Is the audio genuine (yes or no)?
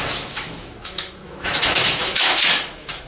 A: no